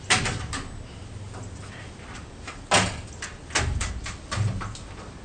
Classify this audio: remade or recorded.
recorded